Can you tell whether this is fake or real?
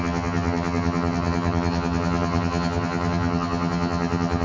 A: fake